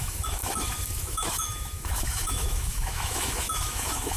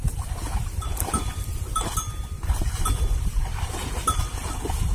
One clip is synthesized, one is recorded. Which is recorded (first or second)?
second